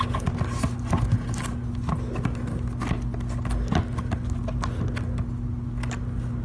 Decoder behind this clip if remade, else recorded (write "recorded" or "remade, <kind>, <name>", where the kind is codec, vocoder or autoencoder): recorded